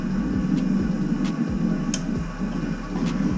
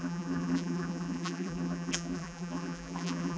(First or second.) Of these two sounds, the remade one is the second